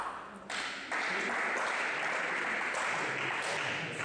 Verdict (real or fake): real